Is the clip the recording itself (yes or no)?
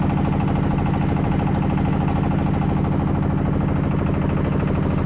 yes